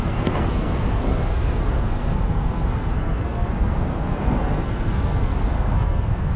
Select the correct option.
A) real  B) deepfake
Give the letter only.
B